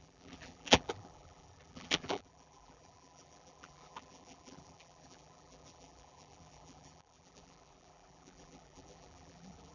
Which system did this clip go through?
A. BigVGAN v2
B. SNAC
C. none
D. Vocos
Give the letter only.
A